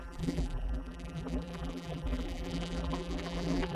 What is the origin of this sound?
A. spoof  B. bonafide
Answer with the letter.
A